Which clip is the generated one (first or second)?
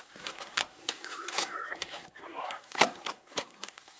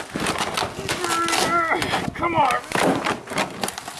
first